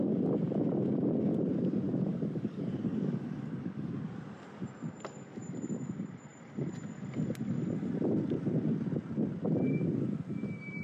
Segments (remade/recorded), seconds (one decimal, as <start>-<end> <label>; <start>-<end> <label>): 0.0-2.1 recorded; 2.1-3.9 remade; 3.9-10.8 recorded